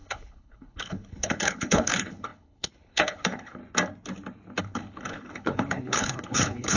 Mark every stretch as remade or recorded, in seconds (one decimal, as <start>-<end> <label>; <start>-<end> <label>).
0.0-3.6 remade; 3.6-4.6 recorded; 4.6-6.8 remade